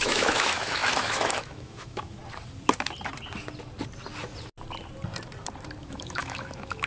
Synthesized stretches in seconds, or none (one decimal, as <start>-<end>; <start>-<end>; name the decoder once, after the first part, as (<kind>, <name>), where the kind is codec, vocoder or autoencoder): 0.0-2.2 (autoencoder, DAC-VAE); 5.8-6.9